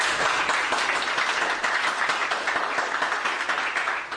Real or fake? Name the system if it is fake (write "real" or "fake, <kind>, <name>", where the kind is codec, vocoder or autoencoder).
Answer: real